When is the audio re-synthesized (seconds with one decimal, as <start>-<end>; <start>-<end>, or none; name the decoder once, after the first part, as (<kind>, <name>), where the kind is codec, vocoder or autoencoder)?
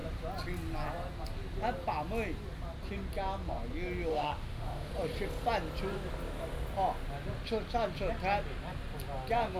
4.1-4.9 (autoencoder, DAC-VAE)